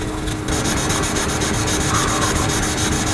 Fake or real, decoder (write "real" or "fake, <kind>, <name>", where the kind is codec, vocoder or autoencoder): real